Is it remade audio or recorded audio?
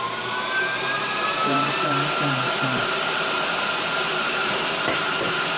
remade